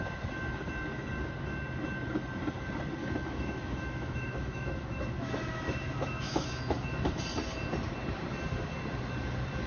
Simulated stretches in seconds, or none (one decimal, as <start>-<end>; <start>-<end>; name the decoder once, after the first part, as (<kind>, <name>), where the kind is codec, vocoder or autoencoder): 3.0-7.2 (autoencoder, DAC-VAE)